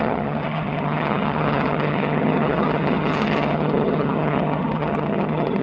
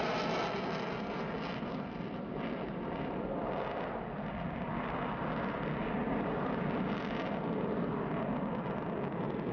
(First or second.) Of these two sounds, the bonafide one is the second